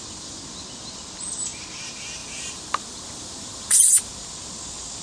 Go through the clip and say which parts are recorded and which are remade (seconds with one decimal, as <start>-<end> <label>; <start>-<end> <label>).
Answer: 0.0-2.2 recorded; 2.2-3.9 remade; 3.9-5.0 recorded